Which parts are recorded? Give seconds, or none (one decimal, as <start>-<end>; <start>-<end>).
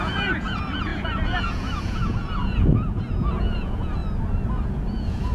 4.0-4.5